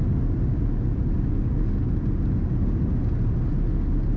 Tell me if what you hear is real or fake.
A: real